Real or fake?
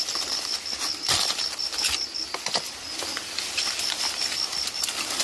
real